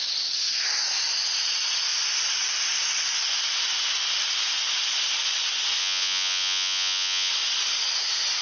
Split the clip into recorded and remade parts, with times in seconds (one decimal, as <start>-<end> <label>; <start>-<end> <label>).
0.0-5.8 recorded; 5.8-7.3 remade; 7.3-8.4 recorded